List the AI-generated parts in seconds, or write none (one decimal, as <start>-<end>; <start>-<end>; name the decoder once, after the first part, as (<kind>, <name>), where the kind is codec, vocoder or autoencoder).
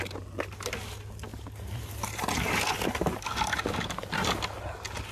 none